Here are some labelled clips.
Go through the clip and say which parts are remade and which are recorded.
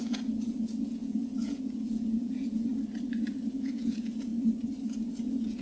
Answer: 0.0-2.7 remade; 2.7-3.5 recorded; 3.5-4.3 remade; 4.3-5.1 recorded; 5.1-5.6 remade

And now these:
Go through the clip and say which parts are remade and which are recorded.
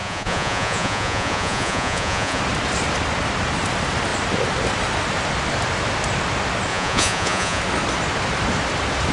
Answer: 0.0-2.4 remade; 2.4-6.7 recorded; 6.7-7.6 remade; 7.6-9.1 recorded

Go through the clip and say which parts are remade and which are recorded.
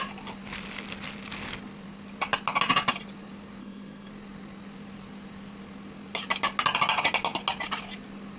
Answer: 0.0-3.6 recorded; 3.6-4.1 remade; 4.1-8.4 recorded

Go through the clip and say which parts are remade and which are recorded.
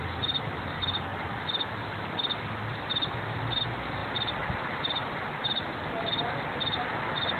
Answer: 0.0-1.1 recorded; 1.1-3.6 remade; 3.6-4.0 recorded; 4.0-6.2 remade; 6.2-7.4 recorded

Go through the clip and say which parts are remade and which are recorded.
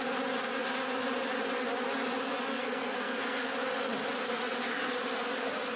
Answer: 0.0-2.5 recorded; 2.5-3.4 remade; 3.4-5.8 recorded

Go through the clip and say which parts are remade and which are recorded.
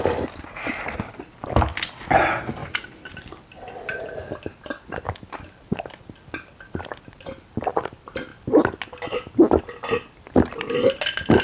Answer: 0.0-11.4 recorded